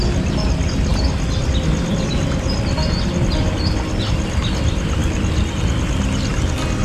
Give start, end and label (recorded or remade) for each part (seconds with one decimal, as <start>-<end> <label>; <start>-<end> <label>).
0.0-6.8 recorded